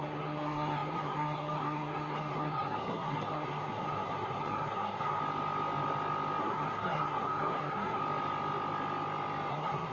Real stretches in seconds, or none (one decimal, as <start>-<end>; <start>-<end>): 5.2-6.4; 8.0-9.5